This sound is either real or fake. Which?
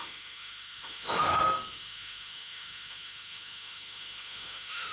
fake